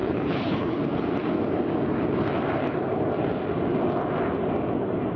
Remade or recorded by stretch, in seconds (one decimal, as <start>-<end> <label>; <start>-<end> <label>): 0.0-0.8 remade; 0.8-5.2 recorded